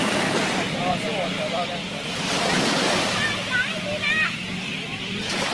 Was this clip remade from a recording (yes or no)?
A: no